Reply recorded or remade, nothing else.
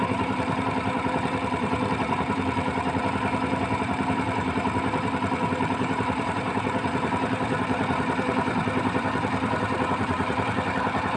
remade